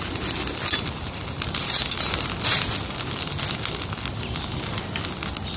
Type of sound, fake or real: real